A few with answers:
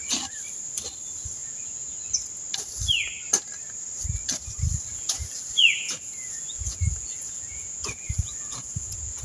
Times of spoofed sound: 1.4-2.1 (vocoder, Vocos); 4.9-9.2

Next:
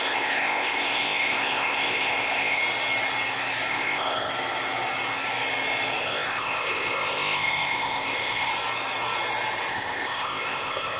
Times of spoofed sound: 0.0-2.6 (codec, ZipCodec); 3.7-4.3; 6.0-8.5; 9.7-11.0

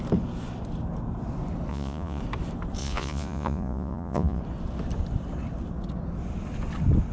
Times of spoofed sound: 1.7-2.2 (vocoder, Vocos); 2.8-4.4

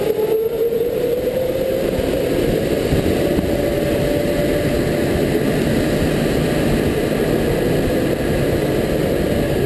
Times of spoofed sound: 0.6-1.4 (vocoder, BigVGAN v2)

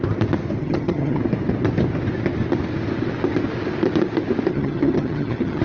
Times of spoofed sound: 0.6-1.2 (vocoder, HiFi-GAN); 4.5-5.6